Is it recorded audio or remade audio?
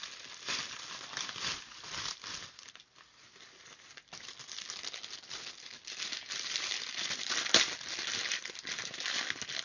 recorded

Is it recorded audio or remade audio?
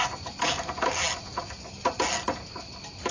recorded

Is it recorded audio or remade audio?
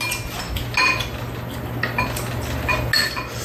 recorded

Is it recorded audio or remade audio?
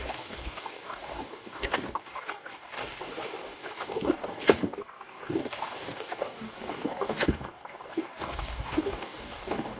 remade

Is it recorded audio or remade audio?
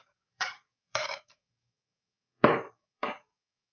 remade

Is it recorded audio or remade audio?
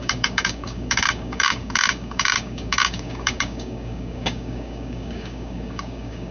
remade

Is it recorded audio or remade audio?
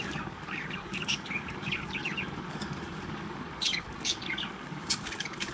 remade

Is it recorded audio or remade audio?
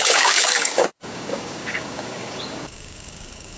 remade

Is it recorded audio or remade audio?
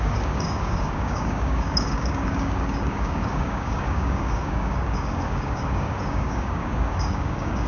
remade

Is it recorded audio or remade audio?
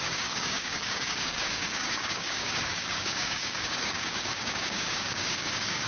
remade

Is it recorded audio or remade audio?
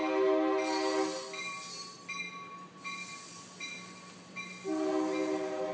recorded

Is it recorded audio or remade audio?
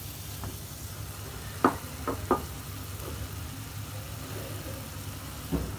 recorded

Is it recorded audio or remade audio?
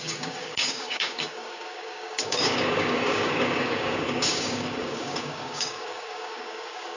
remade